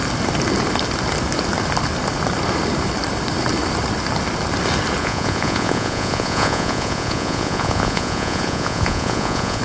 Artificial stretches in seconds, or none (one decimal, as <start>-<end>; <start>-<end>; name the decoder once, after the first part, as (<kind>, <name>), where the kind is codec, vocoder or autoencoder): 5.0-9.6 (vocoder, Vocos)